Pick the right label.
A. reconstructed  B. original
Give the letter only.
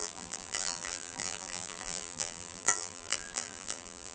A